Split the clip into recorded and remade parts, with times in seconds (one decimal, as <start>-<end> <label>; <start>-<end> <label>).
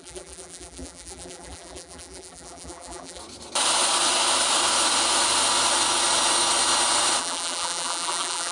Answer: 0.0-3.2 remade; 3.2-7.2 recorded; 7.2-8.5 remade